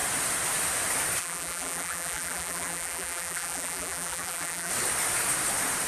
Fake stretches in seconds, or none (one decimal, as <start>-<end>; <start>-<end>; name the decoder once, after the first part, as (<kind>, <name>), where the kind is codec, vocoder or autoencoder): 1.2-4.7 (vocoder, BigVGAN v2)